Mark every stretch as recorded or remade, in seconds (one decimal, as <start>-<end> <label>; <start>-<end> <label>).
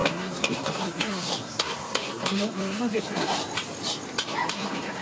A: 0.0-3.4 remade; 3.4-4.5 recorded; 4.5-5.0 remade